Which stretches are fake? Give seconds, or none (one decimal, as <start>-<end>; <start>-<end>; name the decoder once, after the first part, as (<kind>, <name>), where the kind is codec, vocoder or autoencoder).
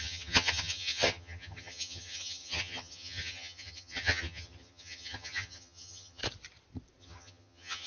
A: 0.0-6.2 (vocoder, HiFi-GAN); 7.0-7.9